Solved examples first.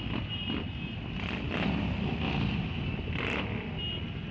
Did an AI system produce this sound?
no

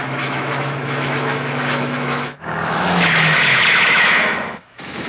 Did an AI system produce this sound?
yes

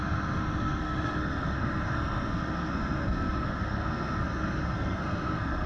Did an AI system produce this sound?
yes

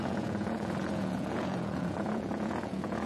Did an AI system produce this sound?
yes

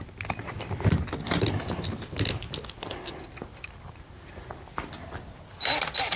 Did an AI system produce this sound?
no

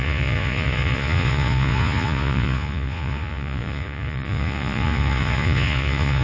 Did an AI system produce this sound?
yes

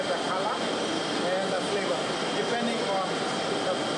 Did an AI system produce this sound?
no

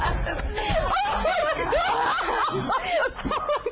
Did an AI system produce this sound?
no